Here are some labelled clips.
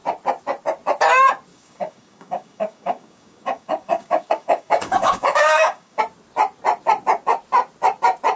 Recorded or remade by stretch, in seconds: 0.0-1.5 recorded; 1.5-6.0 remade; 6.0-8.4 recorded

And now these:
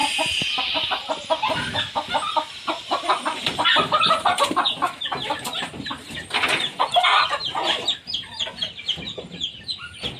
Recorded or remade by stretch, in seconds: 0.0-10.2 recorded

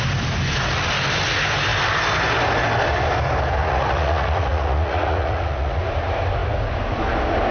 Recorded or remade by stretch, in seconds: 0.0-3.6 recorded; 3.6-5.8 remade; 5.8-7.5 recorded

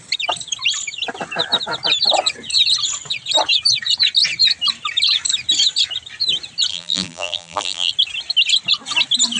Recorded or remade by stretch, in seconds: 0.0-6.7 recorded; 6.7-7.9 remade; 7.9-9.4 recorded

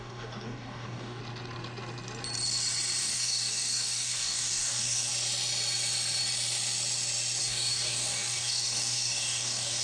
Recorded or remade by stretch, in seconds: 0.0-1.2 remade; 1.2-3.0 recorded; 3.0-5.1 remade; 5.1-7.4 recorded; 7.4-9.8 remade